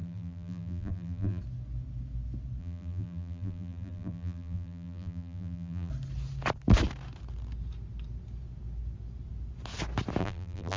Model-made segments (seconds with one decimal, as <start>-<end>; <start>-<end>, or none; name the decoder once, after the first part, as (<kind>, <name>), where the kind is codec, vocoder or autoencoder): 0.0-1.4 (vocoder, BigVGAN v2); 2.6-5.9; 10.2-10.8